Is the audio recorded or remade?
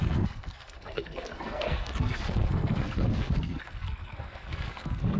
remade